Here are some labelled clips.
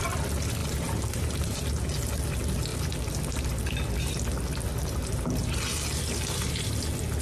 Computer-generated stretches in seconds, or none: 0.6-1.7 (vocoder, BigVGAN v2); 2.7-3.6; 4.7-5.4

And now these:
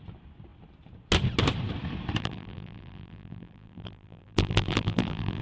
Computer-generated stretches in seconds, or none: 2.2-5.4 (vocoder, BigVGAN v2)

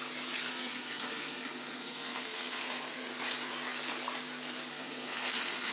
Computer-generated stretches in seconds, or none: 0.5-3.1 (codec, SNAC); 4.7-5.7

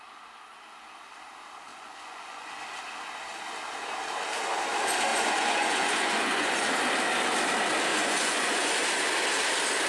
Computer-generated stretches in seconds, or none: 1.7-2.5 (vocoder, Vocos); 5.1-6.6; 7.9-8.7

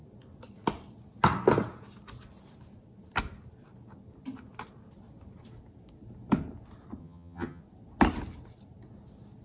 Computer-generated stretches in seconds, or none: 7.0-7.6 (vocoder, HiFi-GAN)

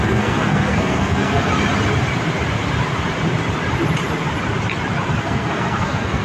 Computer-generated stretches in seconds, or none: 0.0-1.5 (codec, SNAC); 5.2-6.2